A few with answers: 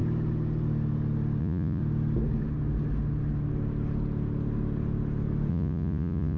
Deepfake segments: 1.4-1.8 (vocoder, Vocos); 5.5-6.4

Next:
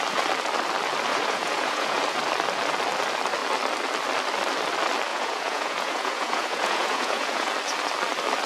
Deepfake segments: 1.1-2.0 (vocoder, Vocos); 5.1-7.5

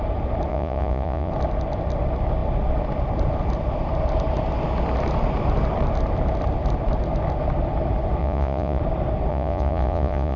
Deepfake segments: 0.5-1.3 (vocoder, Vocos); 8.2-8.8; 9.3-10.4

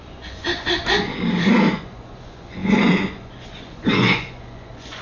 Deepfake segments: 0.0-1.1 (vocoder, Vocos); 1.7-5.0

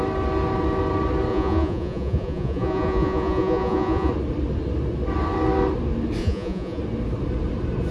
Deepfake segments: 1.3-4.1 (vocoder, Vocos); 6.2-6.8